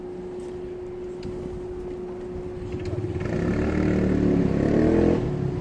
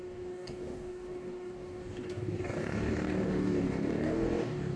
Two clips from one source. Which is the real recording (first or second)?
first